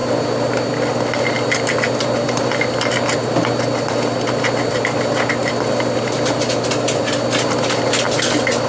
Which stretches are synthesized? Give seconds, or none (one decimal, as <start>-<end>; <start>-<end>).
none